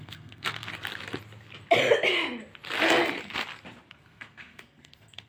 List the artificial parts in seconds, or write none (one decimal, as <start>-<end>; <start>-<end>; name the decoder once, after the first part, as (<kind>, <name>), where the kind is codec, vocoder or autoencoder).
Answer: 0.0-0.7 (codec, SNAC); 3.9-5.3